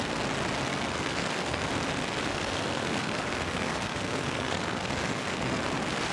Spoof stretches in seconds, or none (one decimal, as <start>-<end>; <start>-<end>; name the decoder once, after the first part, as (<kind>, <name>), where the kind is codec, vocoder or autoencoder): 0.7-1.7 (codec, SNAC); 2.3-5.6